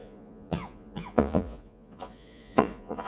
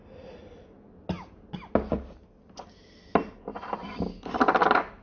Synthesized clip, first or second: first